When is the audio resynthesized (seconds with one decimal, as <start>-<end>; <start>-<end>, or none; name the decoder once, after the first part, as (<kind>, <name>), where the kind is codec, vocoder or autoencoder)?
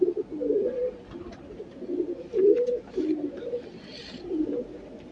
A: none